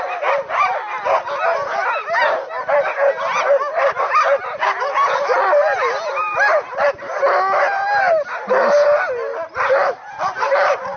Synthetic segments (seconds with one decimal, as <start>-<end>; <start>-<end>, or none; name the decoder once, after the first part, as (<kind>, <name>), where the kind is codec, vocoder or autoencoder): none